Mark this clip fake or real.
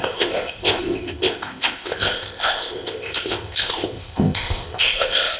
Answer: fake